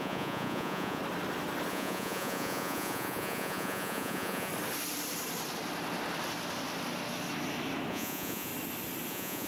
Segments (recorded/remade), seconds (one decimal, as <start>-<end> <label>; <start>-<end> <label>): 0.0-1.0 remade; 1.0-1.7 recorded; 1.7-4.5 remade; 4.5-7.9 recorded; 7.9-8.5 remade; 8.5-9.1 recorded; 9.1-9.5 remade

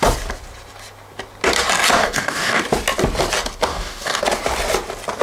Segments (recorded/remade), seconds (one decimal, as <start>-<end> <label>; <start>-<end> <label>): 0.0-2.0 recorded; 2.0-2.6 remade; 2.6-3.7 recorded; 3.7-4.2 remade; 4.2-5.2 recorded

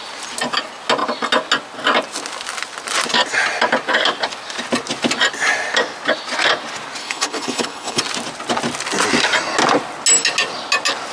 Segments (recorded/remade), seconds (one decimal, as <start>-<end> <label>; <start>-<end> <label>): 0.0-7.0 recorded; 7.0-8.0 remade; 8.0-11.1 recorded

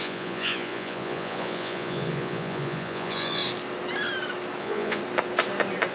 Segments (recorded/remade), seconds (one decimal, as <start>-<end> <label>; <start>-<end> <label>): 0.0-3.4 remade; 3.4-4.6 recorded; 4.6-5.0 remade; 5.0-5.9 recorded

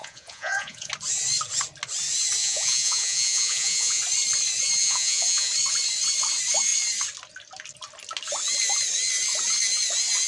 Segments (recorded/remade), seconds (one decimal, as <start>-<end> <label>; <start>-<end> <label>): 0.0-0.9 remade; 0.9-2.4 recorded; 2.4-4.0 remade; 4.0-4.8 recorded; 4.8-5.5 remade; 5.5-10.3 recorded